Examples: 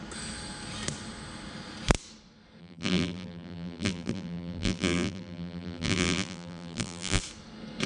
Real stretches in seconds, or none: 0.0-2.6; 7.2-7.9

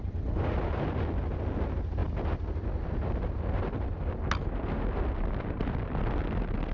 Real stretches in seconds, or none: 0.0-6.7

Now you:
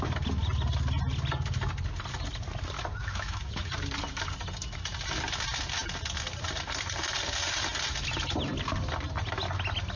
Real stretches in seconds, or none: 0.0-3.0; 3.7-10.0